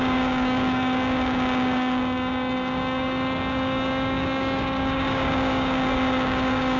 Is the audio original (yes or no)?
no